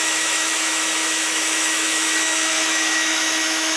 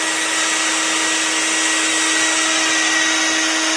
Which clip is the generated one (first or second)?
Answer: first